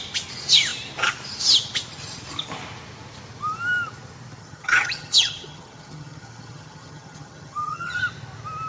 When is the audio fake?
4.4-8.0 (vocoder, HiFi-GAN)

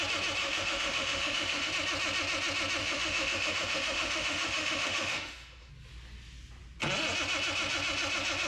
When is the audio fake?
0.4-1.7 (autoencoder, DAC-VAE); 2.8-5.7

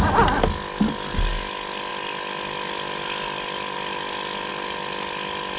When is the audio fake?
none